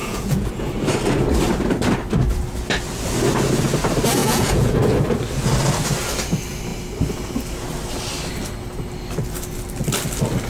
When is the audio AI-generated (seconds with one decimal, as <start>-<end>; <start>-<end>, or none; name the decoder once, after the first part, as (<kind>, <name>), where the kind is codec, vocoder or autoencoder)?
0.0-0.5 (vocoder, Vocos); 4.2-4.8